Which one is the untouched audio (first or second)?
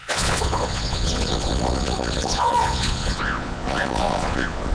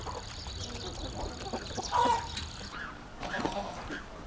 second